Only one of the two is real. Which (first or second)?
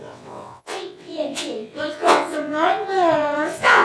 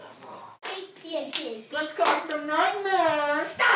second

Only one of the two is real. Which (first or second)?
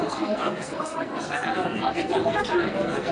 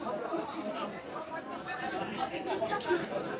second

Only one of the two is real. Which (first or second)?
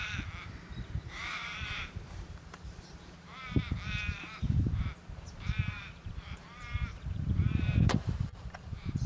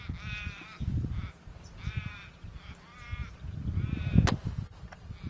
second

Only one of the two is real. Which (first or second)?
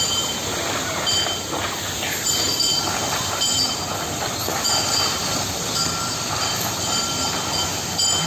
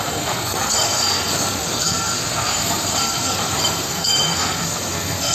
first